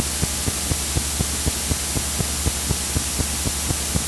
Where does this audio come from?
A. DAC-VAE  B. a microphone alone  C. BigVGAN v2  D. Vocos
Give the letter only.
B